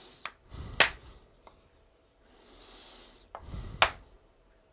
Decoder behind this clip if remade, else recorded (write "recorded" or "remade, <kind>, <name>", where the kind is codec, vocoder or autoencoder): recorded